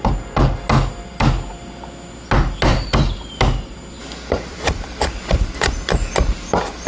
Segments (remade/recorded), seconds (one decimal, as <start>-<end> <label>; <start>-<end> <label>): 0.0-2.7 recorded; 2.7-3.3 remade; 3.3-4.5 recorded; 4.5-5.2 remade; 5.2-6.9 recorded